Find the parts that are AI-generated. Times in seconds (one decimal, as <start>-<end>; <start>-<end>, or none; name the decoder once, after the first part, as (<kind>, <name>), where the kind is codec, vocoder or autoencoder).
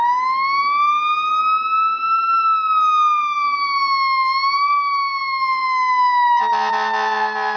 none